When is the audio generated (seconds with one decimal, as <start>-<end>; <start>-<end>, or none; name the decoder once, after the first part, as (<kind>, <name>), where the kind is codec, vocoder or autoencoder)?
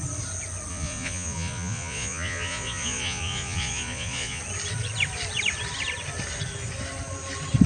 0.7-4.4 (vocoder, Vocos)